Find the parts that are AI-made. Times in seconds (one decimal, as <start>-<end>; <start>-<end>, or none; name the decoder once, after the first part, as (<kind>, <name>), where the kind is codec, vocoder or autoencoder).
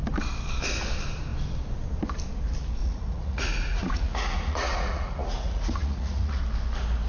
2.8-6.4 (vocoder, Vocos)